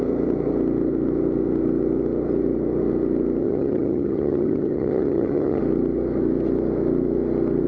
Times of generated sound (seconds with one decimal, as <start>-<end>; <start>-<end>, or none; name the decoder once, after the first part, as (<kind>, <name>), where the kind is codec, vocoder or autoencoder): 3.4-5.6 (vocoder, HiFi-GAN)